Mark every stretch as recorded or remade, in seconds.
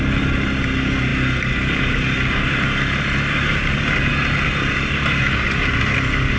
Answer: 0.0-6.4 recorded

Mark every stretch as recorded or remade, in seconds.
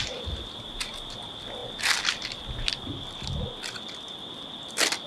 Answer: 0.0-5.1 recorded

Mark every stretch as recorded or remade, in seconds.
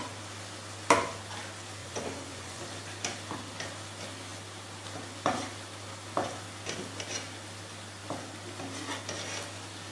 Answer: 0.0-1.8 recorded; 1.8-2.6 remade; 2.6-9.9 recorded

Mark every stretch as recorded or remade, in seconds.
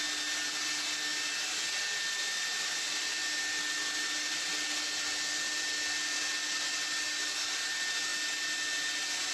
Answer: 0.0-9.3 recorded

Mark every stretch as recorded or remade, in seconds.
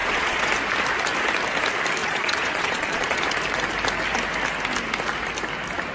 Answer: 0.0-0.5 remade; 0.5-2.0 recorded; 2.0-3.2 remade; 3.2-5.9 recorded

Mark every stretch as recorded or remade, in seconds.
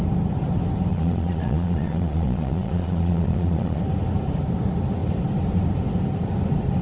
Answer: 0.0-0.9 recorded; 0.9-3.8 remade; 3.8-6.8 recorded